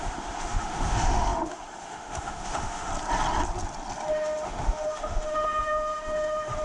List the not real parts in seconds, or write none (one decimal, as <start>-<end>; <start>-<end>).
0.0-2.9; 4.1-6.6